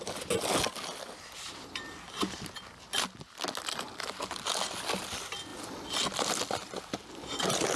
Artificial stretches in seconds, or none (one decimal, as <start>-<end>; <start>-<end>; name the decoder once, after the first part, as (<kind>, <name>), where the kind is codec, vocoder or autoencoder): none